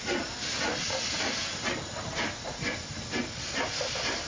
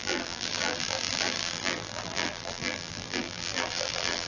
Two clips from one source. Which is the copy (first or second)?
second